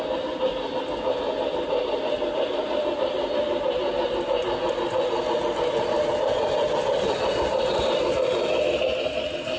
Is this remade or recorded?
recorded